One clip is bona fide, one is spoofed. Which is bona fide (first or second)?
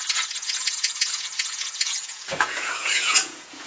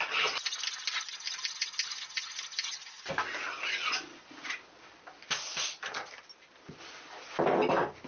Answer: second